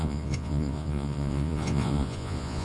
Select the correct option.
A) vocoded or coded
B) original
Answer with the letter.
A